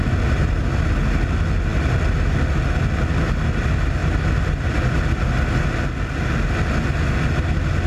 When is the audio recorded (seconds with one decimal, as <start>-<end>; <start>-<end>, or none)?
0.0-7.9